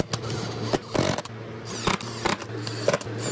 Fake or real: real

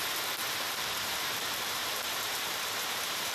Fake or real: fake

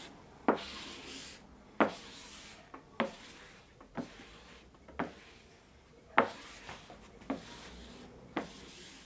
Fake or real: real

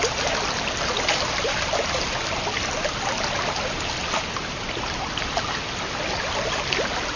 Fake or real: real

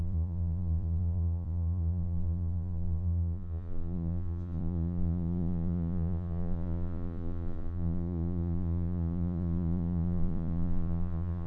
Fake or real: fake